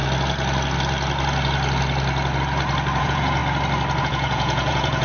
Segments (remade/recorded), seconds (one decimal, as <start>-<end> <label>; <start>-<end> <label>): 0.0-3.0 recorded; 3.0-3.4 remade; 3.4-4.0 recorded; 4.0-5.0 remade